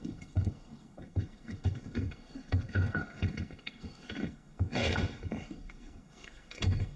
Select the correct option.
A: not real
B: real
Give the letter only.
A